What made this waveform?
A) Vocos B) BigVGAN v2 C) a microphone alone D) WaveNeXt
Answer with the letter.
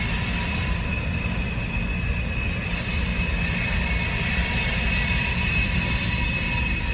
C